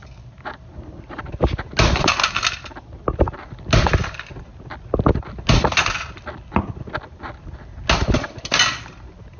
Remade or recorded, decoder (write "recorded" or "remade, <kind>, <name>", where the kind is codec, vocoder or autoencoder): recorded